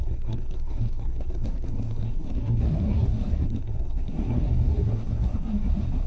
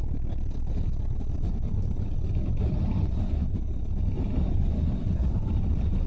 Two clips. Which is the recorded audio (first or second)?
second